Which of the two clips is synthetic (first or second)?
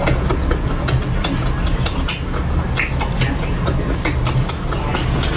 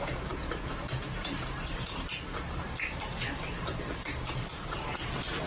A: second